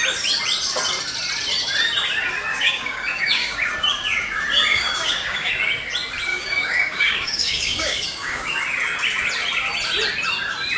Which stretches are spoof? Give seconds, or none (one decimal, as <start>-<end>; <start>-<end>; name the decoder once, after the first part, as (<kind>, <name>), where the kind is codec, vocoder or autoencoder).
2.5-3.7 (codec, DAC); 4.7-5.5; 6.3-8.6